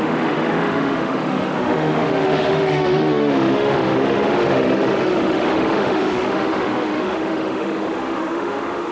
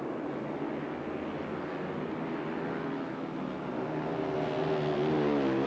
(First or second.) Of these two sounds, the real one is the second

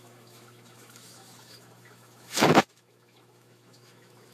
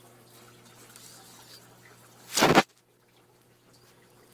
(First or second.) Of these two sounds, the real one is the second